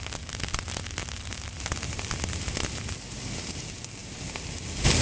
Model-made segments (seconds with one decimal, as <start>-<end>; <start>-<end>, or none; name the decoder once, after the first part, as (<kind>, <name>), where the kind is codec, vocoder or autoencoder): 1.0-2.7 (vocoder, BigVGAN v2); 4.0-4.6

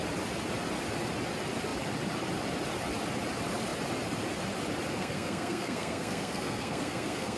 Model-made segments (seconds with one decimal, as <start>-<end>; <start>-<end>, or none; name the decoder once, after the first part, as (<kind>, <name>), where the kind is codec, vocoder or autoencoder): 5.0-7.4 (codec, SNAC)

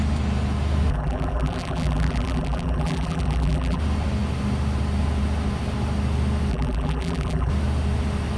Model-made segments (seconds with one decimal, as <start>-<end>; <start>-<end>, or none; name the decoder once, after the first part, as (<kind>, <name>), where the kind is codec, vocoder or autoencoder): 0.9-3.8 (vocoder, BigVGAN v2); 6.5-7.5

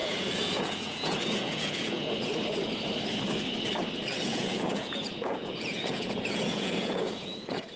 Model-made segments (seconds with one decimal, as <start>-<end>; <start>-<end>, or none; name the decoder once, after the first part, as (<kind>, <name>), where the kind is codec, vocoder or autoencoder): 0.0-2.1 (vocoder, Vocos); 4.3-7.8

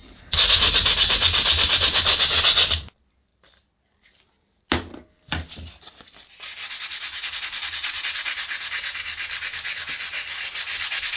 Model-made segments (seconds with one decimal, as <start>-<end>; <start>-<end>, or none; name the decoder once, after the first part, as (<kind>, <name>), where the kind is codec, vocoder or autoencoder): none

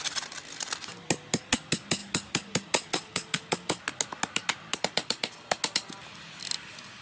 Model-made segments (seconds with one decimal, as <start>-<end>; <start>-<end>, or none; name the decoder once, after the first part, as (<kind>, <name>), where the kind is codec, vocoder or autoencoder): none

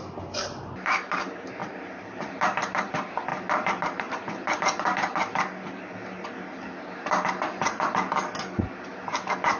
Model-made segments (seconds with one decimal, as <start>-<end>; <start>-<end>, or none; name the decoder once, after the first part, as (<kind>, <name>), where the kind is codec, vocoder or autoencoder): 1.6-2.9 (vocoder, BigVGAN v2); 3.3-4.1

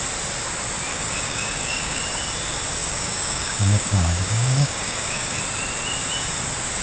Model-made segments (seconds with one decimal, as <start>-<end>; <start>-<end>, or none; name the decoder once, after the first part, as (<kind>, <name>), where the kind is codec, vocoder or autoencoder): 0.9-2.0 (codec, DAC); 2.8-5.4